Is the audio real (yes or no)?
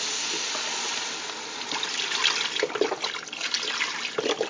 yes